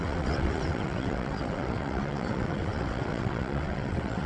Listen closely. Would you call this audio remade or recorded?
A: remade